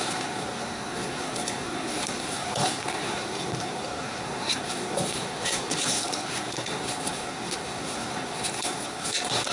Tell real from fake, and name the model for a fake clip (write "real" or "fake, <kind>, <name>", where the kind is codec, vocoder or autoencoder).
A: fake, codec, SNAC